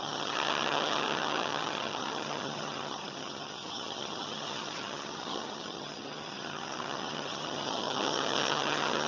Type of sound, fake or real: fake